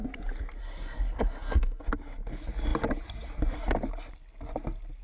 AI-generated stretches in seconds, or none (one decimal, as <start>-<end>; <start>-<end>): 0.6-1.8